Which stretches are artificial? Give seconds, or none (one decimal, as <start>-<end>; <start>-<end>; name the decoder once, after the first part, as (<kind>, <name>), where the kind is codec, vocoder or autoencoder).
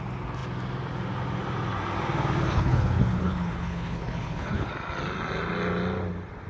2.5-4.7 (codec, HILCodec)